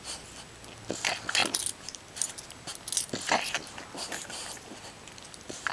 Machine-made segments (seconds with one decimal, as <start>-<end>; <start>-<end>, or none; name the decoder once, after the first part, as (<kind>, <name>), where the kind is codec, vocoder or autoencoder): none